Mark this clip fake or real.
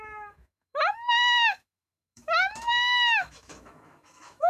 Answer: fake